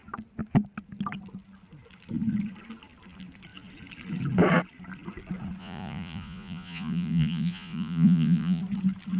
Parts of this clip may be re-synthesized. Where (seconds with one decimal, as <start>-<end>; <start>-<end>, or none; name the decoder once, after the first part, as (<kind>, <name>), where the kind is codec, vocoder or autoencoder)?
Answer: 5.6-8.6 (vocoder, Vocos)